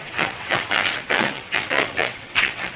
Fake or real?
fake